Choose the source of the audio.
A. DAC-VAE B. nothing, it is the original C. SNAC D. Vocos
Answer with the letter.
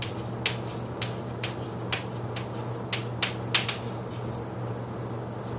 B